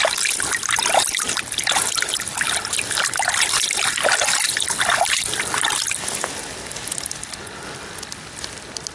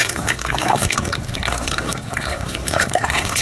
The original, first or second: first